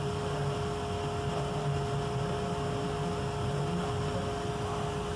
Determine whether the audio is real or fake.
real